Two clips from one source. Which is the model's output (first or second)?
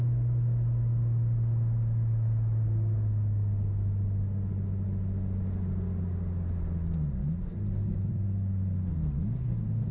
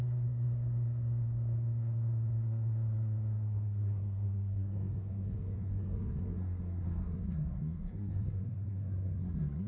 second